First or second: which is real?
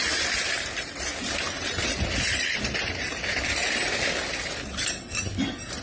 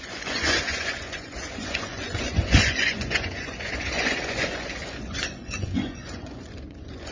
first